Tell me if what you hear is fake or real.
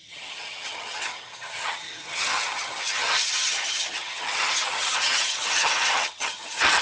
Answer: fake